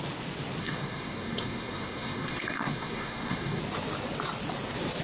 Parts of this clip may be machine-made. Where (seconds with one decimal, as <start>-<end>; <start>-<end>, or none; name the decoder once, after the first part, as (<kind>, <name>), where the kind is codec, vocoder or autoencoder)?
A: 0.6-3.6 (codec, SNAC)